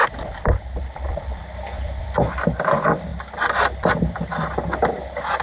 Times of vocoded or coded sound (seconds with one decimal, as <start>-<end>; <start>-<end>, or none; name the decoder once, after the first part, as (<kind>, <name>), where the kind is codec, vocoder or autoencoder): 0.0-5.4 (vocoder, BigVGAN v2)